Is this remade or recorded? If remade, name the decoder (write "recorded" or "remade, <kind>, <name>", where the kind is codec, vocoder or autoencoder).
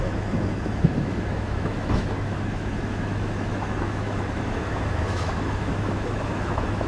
remade, autoencoder, DAC-VAE